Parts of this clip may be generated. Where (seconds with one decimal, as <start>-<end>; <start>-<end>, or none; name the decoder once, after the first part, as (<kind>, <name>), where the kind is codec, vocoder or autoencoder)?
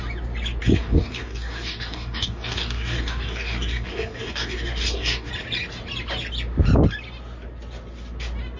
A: 0.6-5.3 (codec, DAC)